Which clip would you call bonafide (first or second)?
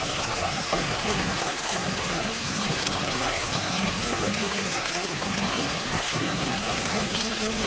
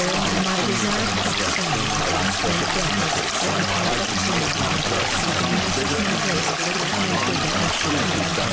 second